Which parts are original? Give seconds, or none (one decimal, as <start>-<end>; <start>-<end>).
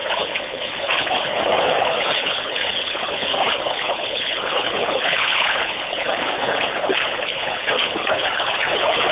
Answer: none